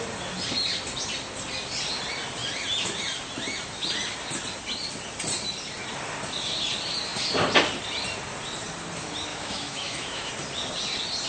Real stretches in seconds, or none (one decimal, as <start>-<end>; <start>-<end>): 0.0-9.3; 10.3-11.3